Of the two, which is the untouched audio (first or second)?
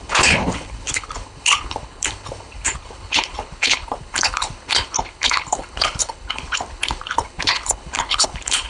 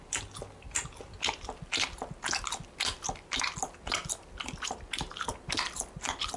second